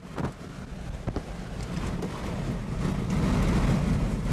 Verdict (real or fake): real